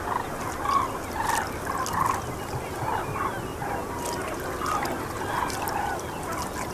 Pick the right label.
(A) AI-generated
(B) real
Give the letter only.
B